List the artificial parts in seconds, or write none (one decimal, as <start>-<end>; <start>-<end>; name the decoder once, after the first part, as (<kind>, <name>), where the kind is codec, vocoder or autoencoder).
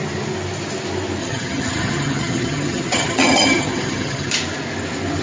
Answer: 1.2-4.3 (vocoder, HiFi-GAN)